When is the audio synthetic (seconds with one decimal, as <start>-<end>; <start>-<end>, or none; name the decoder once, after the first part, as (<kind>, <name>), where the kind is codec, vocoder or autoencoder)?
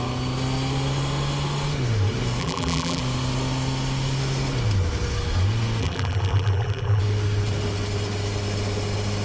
2.4-3.0 (vocoder, BigVGAN v2); 5.8-7.0